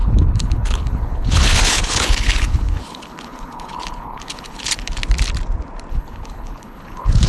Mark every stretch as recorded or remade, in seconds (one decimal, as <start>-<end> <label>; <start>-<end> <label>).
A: 0.0-5.0 remade; 5.0-5.9 recorded; 5.9-7.3 remade